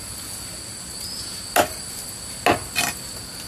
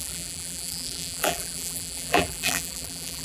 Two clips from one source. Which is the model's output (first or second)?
second